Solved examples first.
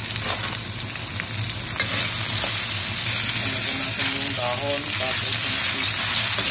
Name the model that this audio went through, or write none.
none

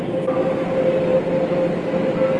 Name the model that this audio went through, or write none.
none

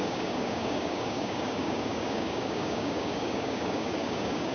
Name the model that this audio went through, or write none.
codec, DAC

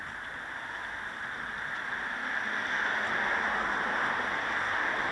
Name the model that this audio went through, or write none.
none